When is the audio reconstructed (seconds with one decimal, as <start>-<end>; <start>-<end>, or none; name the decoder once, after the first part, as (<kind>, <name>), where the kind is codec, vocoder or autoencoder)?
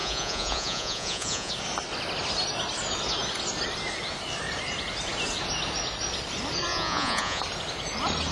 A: 0.0-1.5 (vocoder, Vocos); 6.7-7.4